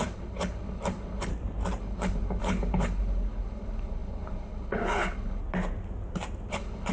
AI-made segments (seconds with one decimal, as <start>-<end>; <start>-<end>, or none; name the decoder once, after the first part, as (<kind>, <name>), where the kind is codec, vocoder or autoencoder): 0.0-1.3 (codec, HILCodec); 1.8-5.4; 6.5-6.9